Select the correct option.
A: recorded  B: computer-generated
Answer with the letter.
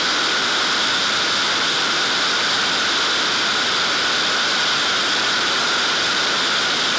A